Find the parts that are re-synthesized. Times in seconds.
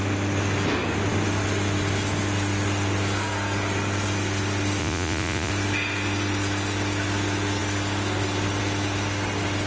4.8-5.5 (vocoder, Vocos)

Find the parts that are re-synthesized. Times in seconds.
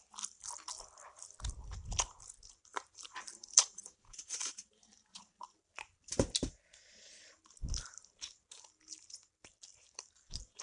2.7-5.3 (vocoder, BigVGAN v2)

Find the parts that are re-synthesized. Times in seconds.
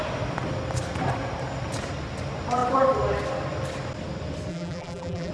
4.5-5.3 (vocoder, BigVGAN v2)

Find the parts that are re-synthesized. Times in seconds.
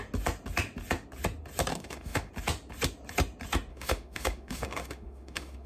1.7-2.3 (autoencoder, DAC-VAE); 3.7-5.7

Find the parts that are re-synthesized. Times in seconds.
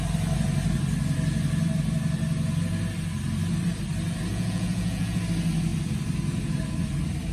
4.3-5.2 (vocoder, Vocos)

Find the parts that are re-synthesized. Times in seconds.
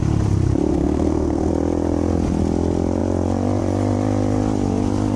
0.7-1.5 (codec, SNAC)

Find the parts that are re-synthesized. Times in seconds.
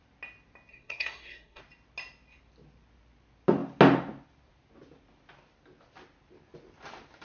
0.7-1.6 (codec, SNAC)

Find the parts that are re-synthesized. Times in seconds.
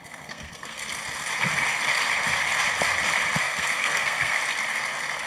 0.0-0.8 (codec, SNAC); 3.4-4.4